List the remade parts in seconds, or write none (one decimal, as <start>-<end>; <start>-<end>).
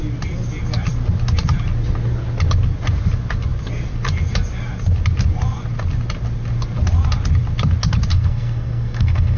8.1-9.4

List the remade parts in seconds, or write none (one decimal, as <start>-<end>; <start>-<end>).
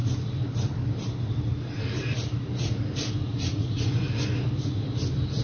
3.3-4.1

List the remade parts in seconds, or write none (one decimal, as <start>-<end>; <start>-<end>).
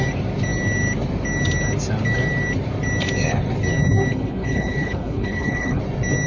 4.1-5.8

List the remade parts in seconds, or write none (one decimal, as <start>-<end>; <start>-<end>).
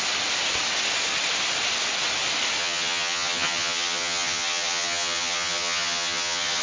2.6-6.6